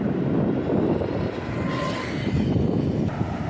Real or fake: real